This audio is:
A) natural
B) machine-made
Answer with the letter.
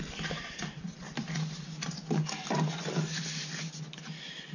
A